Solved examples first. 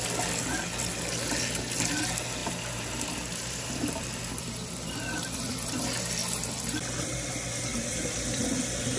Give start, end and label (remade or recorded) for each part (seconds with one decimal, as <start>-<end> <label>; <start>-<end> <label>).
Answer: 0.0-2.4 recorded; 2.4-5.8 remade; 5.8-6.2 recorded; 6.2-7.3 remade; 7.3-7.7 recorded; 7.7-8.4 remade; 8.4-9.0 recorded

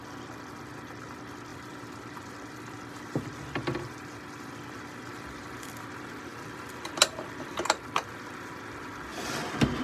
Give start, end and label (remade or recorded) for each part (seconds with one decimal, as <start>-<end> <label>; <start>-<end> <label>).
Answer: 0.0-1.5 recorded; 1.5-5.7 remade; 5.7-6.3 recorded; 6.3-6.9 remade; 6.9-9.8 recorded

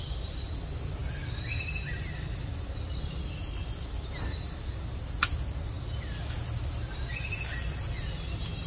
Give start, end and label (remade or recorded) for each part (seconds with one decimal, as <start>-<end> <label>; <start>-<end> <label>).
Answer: 0.0-1.0 recorded; 1.0-3.1 remade; 3.1-8.7 recorded

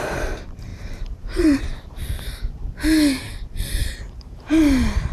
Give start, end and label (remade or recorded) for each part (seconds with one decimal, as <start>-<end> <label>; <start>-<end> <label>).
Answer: 0.0-0.7 recorded; 0.7-1.6 remade; 1.6-3.8 recorded; 3.8-4.6 remade; 4.6-5.1 recorded

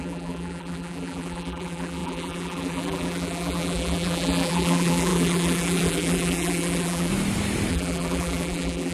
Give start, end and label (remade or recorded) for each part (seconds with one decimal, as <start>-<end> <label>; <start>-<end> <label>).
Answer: 0.0-7.1 remade; 7.1-7.7 recorded; 7.7-8.9 remade

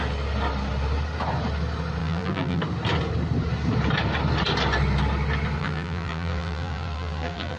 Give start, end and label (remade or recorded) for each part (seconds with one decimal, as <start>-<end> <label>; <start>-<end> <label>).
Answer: 0.0-2.0 recorded; 2.0-2.6 remade; 2.6-5.6 recorded; 5.6-7.6 remade

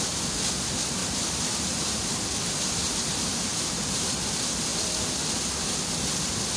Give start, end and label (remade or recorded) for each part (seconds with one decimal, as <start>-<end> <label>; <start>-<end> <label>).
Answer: 0.0-1.0 recorded; 1.0-2.1 remade; 2.1-3.5 recorded; 3.5-4.1 remade; 4.1-6.6 recorded

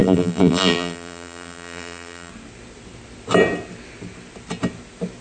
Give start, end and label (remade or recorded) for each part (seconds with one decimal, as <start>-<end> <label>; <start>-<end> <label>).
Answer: 0.0-2.3 remade; 2.3-5.2 recorded